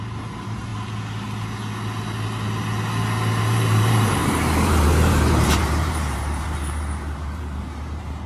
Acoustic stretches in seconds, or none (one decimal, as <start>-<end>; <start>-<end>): 0.7-3.4